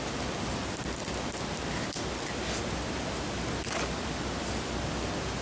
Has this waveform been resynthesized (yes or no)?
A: no